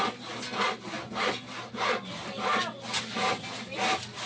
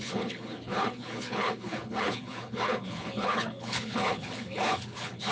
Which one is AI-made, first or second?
second